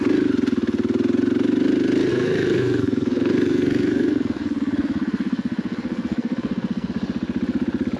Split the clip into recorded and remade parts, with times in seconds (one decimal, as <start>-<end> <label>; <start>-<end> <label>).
0.0-2.1 recorded; 2.1-6.9 remade; 6.9-8.0 recorded